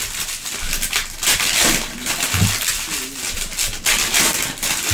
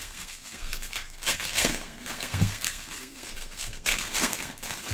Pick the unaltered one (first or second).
first